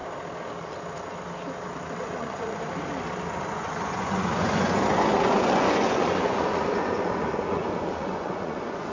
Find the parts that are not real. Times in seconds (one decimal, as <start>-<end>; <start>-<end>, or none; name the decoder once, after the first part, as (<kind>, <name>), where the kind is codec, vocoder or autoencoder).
2.0-2.6 (vocoder, Vocos); 3.5-8.9